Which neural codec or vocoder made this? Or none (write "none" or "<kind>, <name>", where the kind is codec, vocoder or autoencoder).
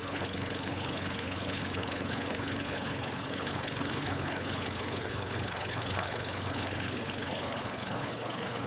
codec, HILCodec